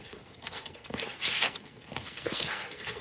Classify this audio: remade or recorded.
remade